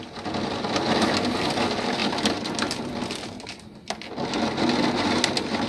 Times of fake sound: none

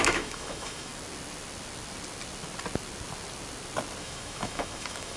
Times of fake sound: 0.0-0.9 (autoencoder, DAC-VAE); 4.0-5.2

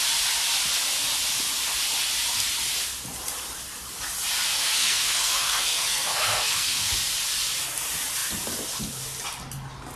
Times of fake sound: 4.6-6.9 (codec, SNAC)

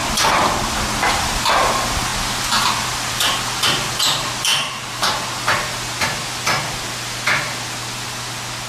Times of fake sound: none

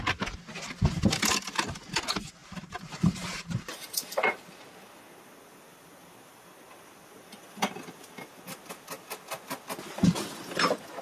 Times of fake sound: 2.4-4.5 (vocoder, BigVGAN v2)

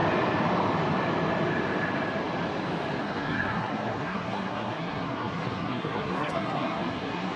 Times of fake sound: 3.0-7.4 (codec, SNAC)

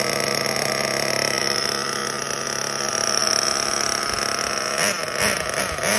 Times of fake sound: none